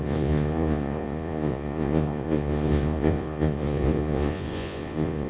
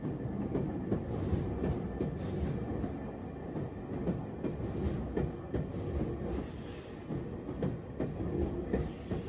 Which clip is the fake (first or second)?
first